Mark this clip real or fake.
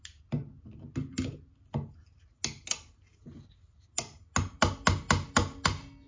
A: real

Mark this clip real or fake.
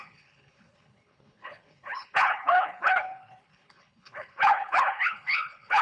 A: fake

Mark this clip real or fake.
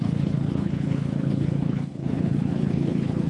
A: fake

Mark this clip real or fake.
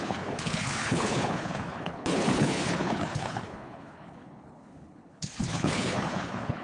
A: fake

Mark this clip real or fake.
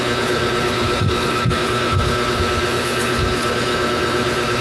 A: fake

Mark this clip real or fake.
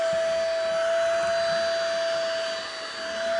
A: real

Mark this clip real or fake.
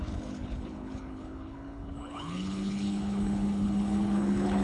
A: fake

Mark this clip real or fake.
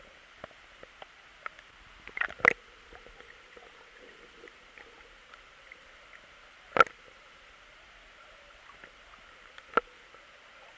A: real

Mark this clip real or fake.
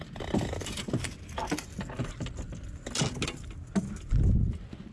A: real